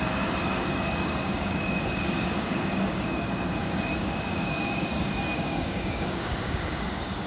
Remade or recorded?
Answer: remade